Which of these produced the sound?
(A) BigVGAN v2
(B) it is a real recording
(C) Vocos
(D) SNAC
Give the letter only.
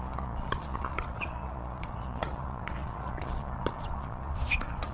C